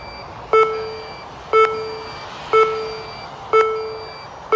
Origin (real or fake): real